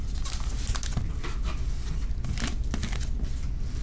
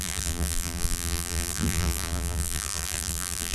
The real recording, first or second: first